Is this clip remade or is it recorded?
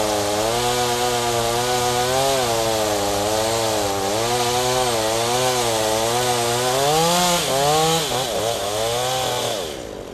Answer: recorded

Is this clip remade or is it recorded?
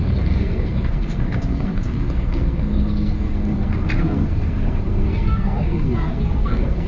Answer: remade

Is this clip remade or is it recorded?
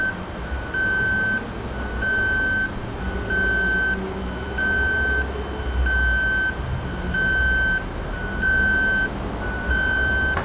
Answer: recorded